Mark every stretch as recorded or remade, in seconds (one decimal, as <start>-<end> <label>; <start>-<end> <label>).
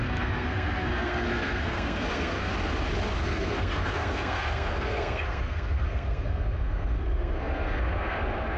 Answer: 0.0-2.5 remade; 2.5-3.2 recorded; 3.2-8.6 remade